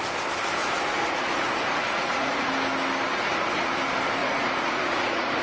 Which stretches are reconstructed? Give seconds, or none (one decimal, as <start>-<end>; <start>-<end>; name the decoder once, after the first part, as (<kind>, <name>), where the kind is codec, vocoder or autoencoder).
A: 0.6-2.5 (vocoder, Vocos); 3.1-3.7; 4.2-5.4